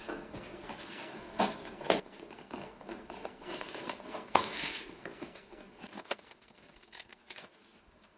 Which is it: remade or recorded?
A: remade